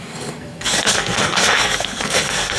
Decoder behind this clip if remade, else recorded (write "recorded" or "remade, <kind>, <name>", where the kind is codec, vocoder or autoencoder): remade, codec, SNAC